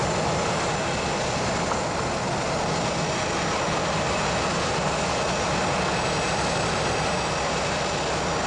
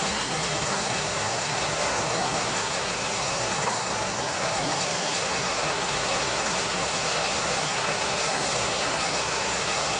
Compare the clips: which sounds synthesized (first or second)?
second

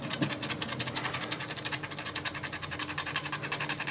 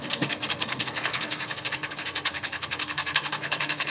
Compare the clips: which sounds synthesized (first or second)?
second